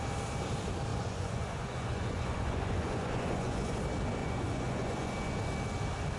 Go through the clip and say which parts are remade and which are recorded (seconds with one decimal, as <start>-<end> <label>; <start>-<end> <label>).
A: 0.0-0.9 recorded; 0.9-3.8 remade; 3.8-4.2 recorded; 4.2-5.1 remade; 5.1-6.2 recorded